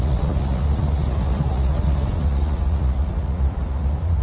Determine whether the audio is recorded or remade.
remade